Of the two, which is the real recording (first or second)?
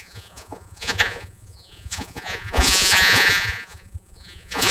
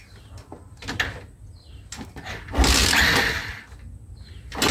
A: second